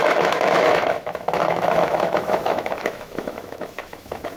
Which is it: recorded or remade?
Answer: remade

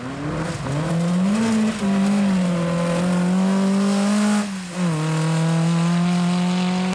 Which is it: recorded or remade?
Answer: recorded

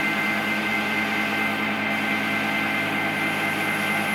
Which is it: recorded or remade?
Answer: recorded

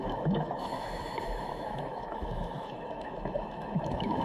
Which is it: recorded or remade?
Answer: remade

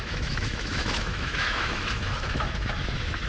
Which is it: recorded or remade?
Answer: remade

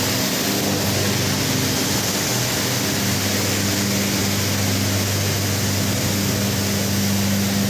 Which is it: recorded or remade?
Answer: recorded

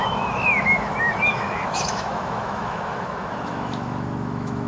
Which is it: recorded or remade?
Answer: remade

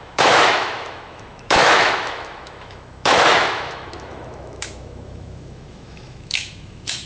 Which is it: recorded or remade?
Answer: remade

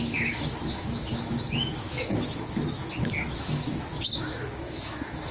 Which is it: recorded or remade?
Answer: remade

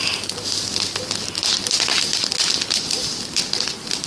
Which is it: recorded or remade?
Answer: recorded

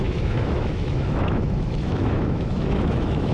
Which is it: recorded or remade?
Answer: remade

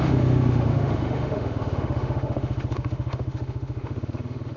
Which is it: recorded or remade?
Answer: remade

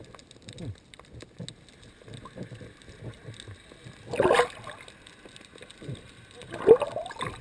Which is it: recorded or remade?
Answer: recorded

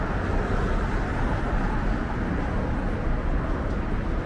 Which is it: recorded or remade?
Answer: recorded